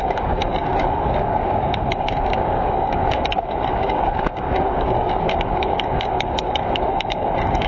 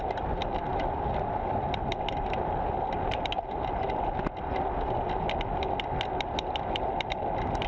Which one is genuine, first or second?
second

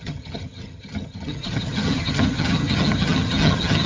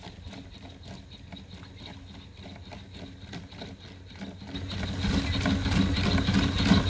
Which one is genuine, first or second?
second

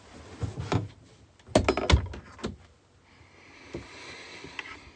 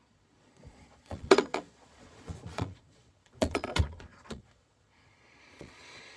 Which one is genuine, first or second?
first